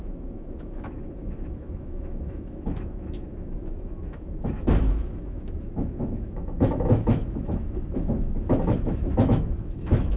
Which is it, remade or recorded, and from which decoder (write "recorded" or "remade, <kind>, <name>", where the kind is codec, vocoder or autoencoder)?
remade, autoencoder, DAC-VAE